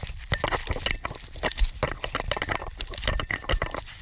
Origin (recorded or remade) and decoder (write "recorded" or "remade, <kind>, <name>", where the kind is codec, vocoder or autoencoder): recorded